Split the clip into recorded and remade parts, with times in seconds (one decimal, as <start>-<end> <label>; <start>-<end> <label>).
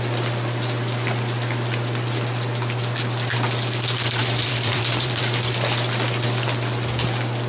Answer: 0.0-4.2 recorded; 4.2-5.2 remade; 5.2-7.5 recorded